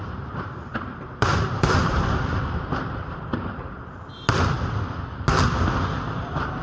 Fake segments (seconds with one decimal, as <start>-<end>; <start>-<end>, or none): 0.0-3.8